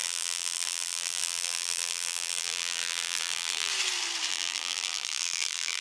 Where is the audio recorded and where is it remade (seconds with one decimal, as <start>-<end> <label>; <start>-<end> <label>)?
0.0-3.7 remade; 3.7-4.3 recorded; 4.3-5.8 remade